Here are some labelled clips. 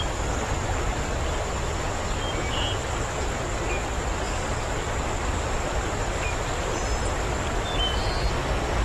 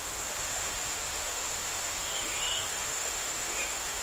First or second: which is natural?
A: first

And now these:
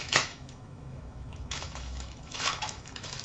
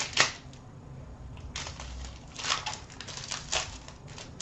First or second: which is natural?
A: second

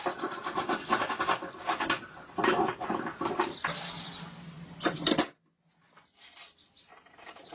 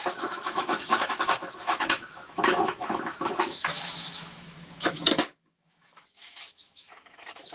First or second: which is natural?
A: first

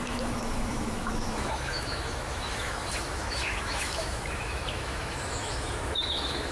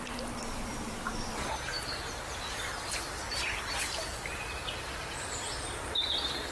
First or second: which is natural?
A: second